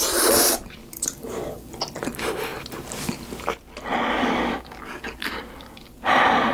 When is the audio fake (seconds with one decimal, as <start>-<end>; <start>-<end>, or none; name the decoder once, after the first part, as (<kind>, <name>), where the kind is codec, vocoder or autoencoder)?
0.8-1.7 (codec, DAC); 4.1-6.1